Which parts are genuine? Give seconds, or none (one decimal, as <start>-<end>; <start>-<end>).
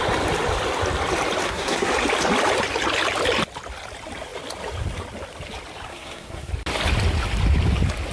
0.0-1.4; 1.9-5.9; 6.5-8.1